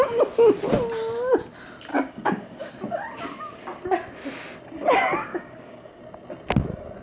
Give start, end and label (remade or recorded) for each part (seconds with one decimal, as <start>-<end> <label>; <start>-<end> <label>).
0.0-1.9 recorded; 1.9-2.7 remade; 2.7-5.3 recorded; 5.3-6.0 remade; 6.0-7.0 recorded